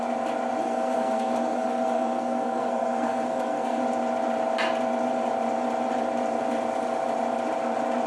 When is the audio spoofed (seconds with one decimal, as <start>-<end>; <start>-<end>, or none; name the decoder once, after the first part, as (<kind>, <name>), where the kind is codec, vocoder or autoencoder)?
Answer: 0.6-3.8 (codec, SNAC)